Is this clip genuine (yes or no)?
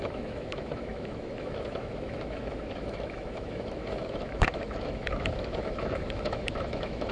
no